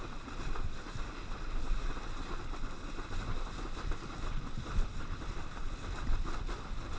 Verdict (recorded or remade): recorded